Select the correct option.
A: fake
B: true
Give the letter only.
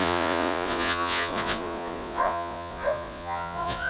A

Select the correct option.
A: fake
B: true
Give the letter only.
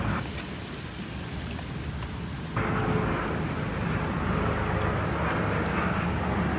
B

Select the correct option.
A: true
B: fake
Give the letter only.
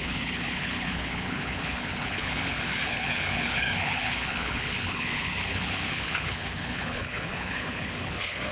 B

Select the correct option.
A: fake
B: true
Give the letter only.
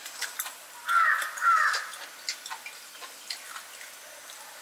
A